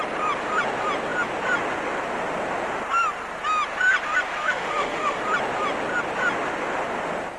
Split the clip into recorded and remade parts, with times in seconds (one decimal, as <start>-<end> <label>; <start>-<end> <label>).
0.0-4.4 recorded; 4.4-5.2 remade; 5.2-7.4 recorded